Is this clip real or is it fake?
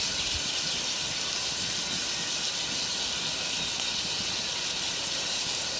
real